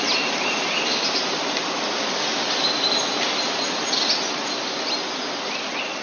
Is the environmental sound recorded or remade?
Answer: recorded